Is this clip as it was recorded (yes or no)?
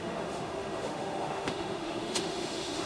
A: no